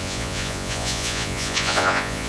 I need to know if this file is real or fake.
fake